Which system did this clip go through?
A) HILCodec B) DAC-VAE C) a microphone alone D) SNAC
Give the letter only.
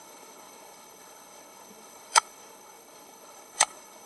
A